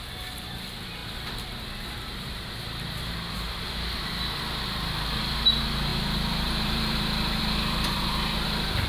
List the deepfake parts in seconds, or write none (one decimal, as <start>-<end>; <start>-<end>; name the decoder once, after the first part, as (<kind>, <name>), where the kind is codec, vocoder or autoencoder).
0.0-8.9 (vocoder, BigVGAN v2)